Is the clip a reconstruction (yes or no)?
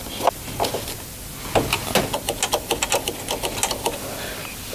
no